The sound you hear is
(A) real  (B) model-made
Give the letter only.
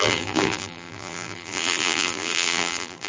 B